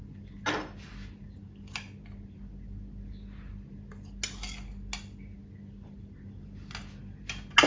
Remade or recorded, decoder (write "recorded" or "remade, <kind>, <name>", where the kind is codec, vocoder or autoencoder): recorded